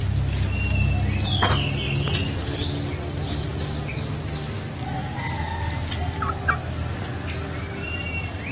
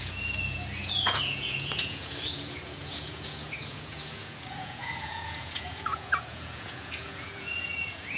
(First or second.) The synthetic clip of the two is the second